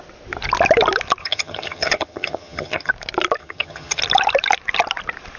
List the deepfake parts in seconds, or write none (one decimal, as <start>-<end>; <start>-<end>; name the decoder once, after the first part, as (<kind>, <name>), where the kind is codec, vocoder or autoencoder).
1.2-2.9 (vocoder, HiFi-GAN); 3.4-4.0